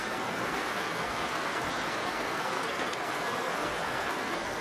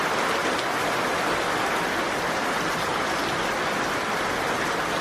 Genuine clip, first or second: second